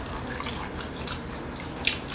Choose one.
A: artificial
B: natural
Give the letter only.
A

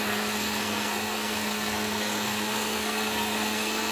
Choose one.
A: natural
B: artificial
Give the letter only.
B